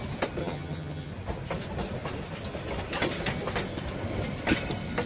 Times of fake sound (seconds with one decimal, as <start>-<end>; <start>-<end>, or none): 0.4-1.1

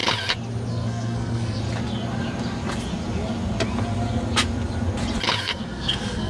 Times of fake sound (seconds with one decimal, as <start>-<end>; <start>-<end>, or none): 0.7-1.6; 5.4-6.3

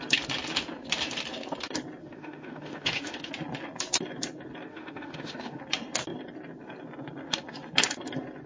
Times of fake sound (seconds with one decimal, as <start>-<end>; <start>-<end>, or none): 2.0-3.3; 4.7-5.6